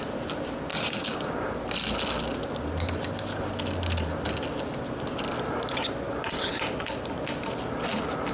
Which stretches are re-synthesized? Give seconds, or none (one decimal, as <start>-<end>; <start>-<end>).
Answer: 0.7-1.3